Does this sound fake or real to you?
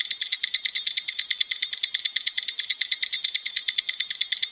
real